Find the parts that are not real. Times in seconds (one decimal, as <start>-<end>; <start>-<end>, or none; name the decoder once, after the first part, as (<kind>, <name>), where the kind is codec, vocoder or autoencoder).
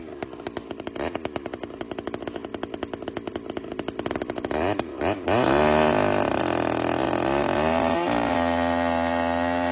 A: none